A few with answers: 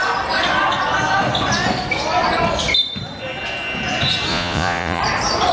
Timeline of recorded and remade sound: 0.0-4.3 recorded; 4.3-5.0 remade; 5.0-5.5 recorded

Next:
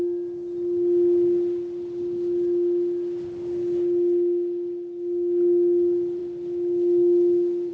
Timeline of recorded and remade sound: 0.0-7.7 recorded

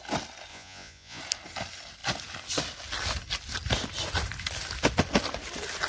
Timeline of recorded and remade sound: 0.0-0.5 recorded; 0.5-1.2 remade; 1.2-5.9 recorded

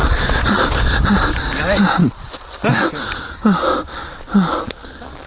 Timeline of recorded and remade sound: 0.0-0.6 remade; 0.6-5.3 recorded

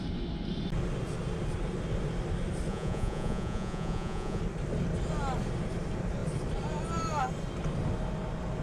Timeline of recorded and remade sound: 0.0-2.7 recorded; 2.7-4.4 remade; 4.4-8.6 recorded

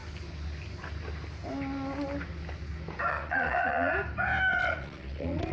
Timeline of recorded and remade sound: 0.0-3.1 recorded; 3.1-3.9 remade; 3.9-4.6 recorded; 4.6-5.5 remade

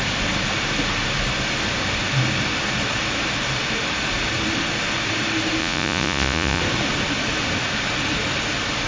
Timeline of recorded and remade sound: 0.0-5.6 recorded; 5.6-6.6 remade; 6.6-8.9 recorded